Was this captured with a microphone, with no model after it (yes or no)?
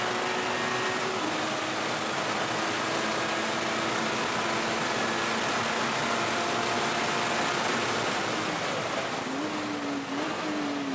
yes